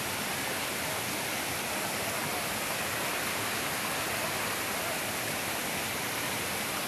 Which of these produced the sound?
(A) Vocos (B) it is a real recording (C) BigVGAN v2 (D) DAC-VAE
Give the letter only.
B